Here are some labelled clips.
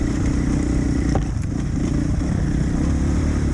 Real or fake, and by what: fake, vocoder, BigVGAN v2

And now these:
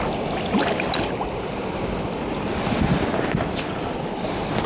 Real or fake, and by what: real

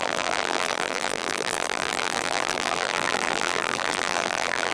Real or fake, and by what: fake, vocoder, BigVGAN v2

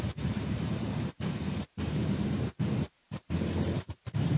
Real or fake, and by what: fake, vocoder, BigVGAN v2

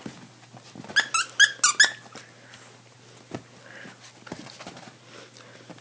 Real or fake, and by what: real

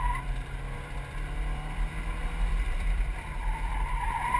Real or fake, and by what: fake, vocoder, BigVGAN v2